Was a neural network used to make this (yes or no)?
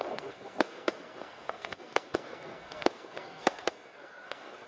yes